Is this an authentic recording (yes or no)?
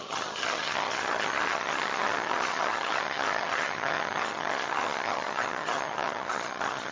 no